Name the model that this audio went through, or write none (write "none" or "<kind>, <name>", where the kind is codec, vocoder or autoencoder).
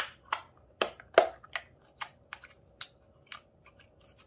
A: none